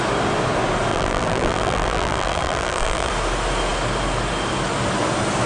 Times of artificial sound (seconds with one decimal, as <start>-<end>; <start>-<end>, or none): 0.9-3.1